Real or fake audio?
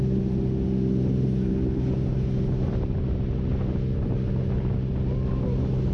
real